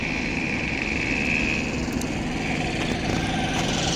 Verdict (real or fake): real